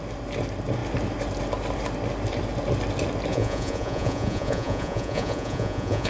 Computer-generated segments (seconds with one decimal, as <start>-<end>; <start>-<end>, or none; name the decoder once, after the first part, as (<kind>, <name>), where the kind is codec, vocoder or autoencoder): 3.3-6.1 (vocoder, Vocos)